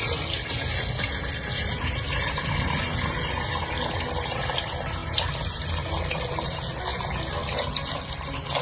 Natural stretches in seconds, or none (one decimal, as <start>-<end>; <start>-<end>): 0.0-8.6